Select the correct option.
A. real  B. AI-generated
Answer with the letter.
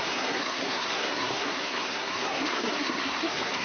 B